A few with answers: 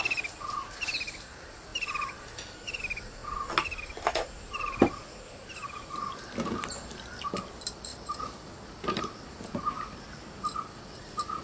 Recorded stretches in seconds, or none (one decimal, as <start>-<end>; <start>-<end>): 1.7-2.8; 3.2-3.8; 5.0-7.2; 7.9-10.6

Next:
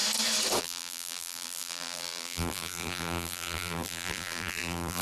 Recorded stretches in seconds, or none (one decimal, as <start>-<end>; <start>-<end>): 0.0-0.6

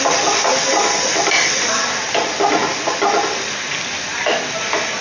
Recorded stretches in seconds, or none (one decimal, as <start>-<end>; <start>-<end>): none

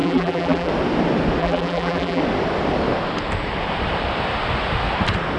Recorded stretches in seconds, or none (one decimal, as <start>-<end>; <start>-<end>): 0.7-1.4; 2.2-5.4